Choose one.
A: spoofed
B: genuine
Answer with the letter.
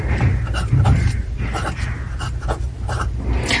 B